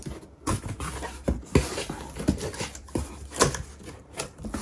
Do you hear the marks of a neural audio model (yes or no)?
no